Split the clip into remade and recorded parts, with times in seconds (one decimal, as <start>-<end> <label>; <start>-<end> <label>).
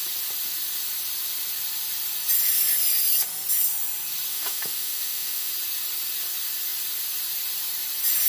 0.0-4.3 recorded; 4.3-5.5 remade; 5.5-8.3 recorded